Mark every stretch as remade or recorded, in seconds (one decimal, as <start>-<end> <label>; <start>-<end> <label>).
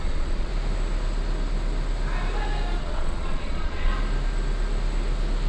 0.0-0.5 remade; 0.5-2.8 recorded; 2.8-3.9 remade; 3.9-5.5 recorded